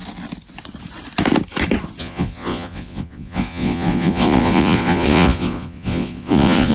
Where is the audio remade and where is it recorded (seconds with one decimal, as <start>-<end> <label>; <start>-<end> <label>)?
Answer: 0.0-2.0 recorded; 2.0-6.7 remade